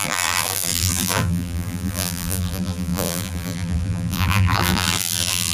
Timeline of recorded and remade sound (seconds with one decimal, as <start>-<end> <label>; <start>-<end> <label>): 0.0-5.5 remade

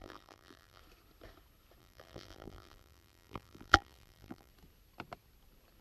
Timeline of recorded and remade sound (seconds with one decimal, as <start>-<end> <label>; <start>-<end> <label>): 0.0-0.8 remade; 0.8-1.8 recorded; 1.8-4.5 remade; 4.5-5.8 recorded

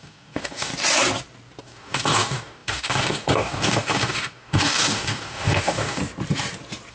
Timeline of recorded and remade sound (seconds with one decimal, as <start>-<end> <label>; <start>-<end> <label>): 0.0-0.7 remade; 0.7-1.6 recorded; 1.6-6.0 remade; 6.0-6.9 recorded

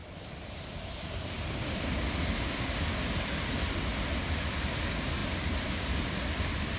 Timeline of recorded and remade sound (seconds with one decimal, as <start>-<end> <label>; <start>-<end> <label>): 0.0-6.8 recorded

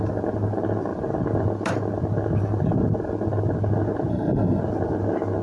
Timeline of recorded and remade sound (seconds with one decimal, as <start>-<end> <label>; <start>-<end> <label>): 0.0-4.1 recorded; 4.1-4.6 remade; 4.6-5.4 recorded

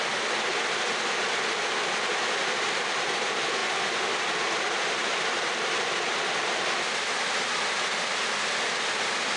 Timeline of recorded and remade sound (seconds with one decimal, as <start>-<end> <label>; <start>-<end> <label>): 0.0-9.4 recorded

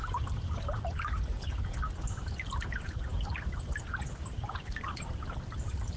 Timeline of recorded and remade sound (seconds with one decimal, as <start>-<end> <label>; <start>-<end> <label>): 0.0-6.0 recorded

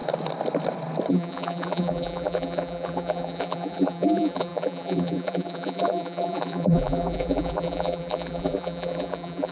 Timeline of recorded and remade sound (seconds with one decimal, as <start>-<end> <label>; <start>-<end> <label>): 0.0-1.1 recorded; 1.1-9.5 remade